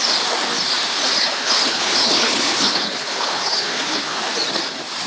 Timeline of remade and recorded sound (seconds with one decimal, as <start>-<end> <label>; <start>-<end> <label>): 0.0-1.2 recorded; 1.2-4.3 remade; 4.3-5.1 recorded